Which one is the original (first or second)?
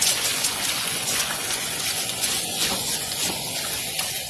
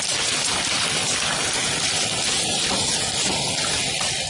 second